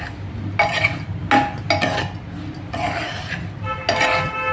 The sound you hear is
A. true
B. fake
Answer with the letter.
A